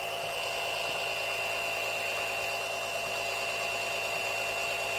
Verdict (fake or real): real